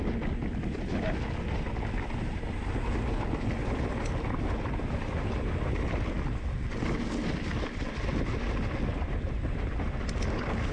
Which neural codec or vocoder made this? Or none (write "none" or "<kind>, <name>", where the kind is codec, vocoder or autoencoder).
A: none